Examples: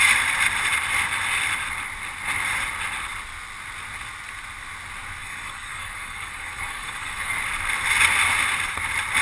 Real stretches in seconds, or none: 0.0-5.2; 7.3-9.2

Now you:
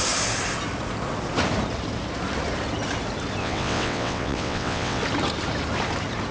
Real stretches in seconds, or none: 0.0-3.4; 5.0-6.3